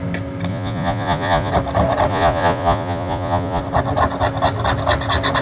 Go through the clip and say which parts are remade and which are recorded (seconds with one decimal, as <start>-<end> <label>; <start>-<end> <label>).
0.0-0.5 recorded; 0.5-1.5 remade; 1.5-2.1 recorded; 2.1-3.6 remade; 3.6-5.4 recorded